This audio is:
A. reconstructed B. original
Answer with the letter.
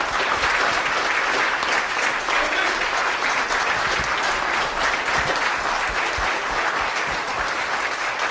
B